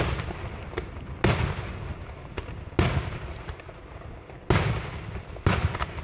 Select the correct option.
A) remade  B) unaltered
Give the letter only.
B